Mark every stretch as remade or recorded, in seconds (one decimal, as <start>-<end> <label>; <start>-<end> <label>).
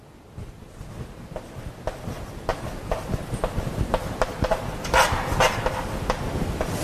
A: 0.0-6.8 recorded